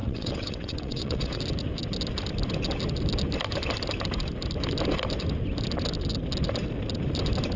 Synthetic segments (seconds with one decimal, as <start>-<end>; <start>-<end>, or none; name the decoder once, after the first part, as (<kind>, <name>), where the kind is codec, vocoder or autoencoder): 0.0-1.4 (vocoder, WaveNeXt)